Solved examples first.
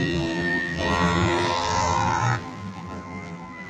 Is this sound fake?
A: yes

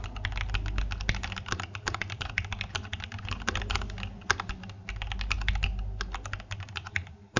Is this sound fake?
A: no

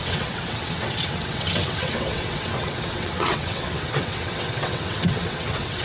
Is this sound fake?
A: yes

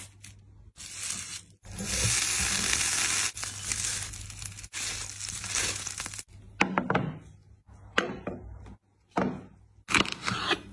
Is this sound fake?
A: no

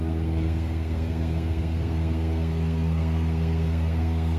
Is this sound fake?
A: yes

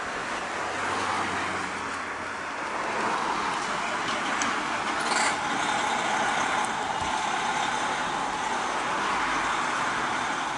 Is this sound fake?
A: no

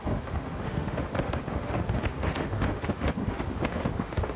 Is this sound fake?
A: yes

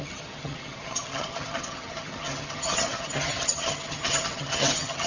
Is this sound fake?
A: yes